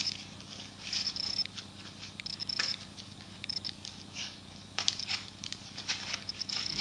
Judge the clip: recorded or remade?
remade